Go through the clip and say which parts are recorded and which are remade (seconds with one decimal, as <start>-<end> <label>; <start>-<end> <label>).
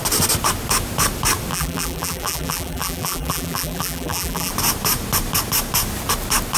0.0-1.5 recorded; 1.5-4.5 remade; 4.5-6.6 recorded